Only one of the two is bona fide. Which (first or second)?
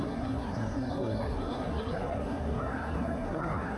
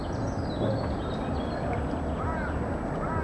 second